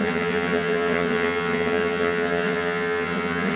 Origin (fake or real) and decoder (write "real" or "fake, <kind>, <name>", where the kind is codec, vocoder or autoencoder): fake, vocoder, HiFi-GAN